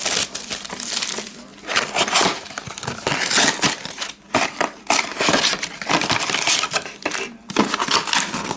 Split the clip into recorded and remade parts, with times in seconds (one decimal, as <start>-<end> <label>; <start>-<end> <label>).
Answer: 0.0-8.6 recorded